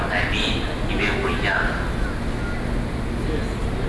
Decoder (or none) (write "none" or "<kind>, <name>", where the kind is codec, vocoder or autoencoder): none